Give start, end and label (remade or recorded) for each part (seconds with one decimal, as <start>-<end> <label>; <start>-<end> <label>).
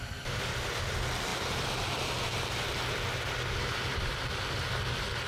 0.0-5.3 recorded